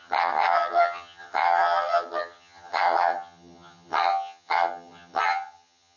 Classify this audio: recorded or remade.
remade